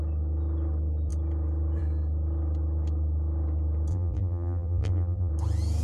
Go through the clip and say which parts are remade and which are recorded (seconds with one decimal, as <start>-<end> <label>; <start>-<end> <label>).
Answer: 0.0-3.9 recorded; 3.9-5.3 remade; 5.3-5.8 recorded